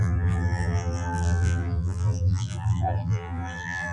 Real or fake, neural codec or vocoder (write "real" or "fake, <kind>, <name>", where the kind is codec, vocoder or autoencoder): fake, vocoder, BigVGAN v2